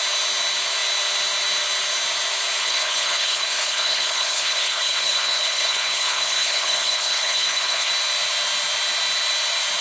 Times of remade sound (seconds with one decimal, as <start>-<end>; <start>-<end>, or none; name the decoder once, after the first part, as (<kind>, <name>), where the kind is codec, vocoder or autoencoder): 2.6-7.9 (codec, HILCodec)